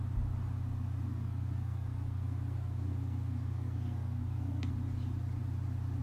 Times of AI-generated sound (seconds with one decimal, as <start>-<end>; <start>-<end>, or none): 1.1-4.7